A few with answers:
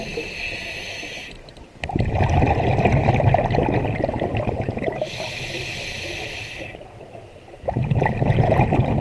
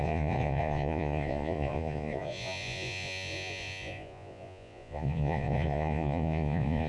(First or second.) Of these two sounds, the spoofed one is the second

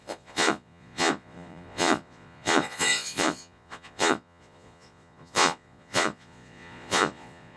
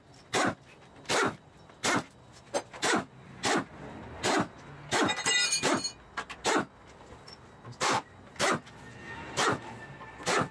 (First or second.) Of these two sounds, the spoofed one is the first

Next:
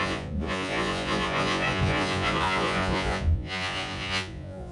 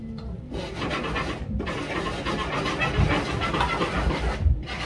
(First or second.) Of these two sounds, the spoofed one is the first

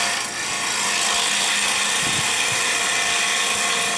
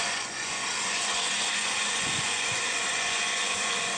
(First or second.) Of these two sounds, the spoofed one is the second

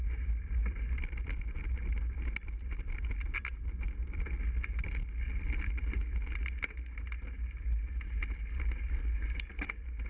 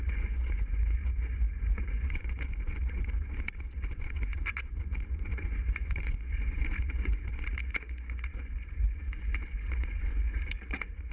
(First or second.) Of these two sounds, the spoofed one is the second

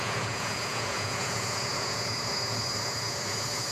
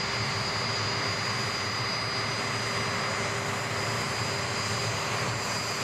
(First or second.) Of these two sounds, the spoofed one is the first